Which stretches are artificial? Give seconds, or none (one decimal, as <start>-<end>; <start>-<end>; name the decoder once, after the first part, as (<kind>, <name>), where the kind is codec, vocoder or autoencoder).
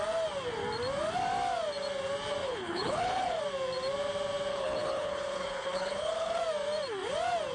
2.4-3.4 (codec, HILCodec); 4.5-6.4